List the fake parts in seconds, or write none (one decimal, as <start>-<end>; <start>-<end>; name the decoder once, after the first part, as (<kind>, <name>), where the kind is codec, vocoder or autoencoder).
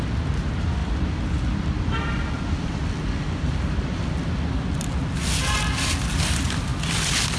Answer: 0.8-4.9 (vocoder, BigVGAN v2)